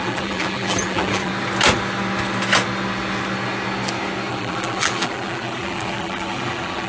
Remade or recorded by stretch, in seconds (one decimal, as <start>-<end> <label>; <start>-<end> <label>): 0.0-1.3 remade; 1.3-4.3 recorded; 4.3-6.9 remade